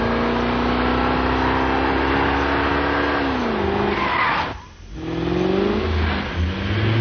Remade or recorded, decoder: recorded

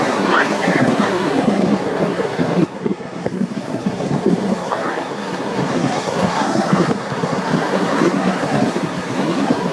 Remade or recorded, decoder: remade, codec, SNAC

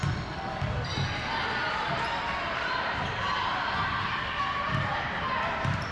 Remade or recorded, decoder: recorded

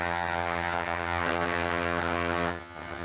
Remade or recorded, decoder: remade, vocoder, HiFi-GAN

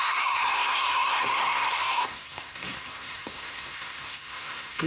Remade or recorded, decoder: remade, codec, SNAC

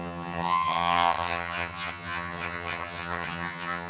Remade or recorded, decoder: remade, vocoder, HiFi-GAN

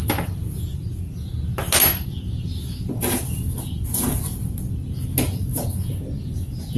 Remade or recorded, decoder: recorded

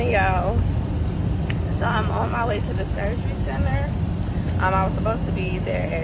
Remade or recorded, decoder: recorded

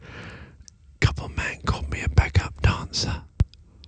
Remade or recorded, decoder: recorded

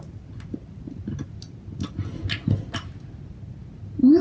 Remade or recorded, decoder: recorded